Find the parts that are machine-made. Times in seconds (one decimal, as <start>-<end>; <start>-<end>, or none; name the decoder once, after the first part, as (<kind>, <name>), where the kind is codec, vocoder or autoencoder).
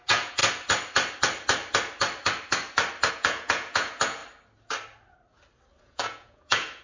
0.0-0.4 (vocoder, Vocos); 3.1-4.2; 5.8-6.8